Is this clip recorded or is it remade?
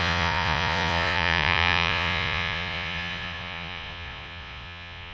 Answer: remade